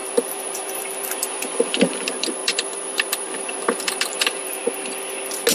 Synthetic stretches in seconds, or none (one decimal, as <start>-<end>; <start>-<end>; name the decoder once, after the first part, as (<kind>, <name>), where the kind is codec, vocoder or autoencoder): 0.0-4.6 (vocoder, BigVGAN v2)